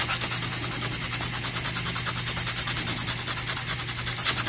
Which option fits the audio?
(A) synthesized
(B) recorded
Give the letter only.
B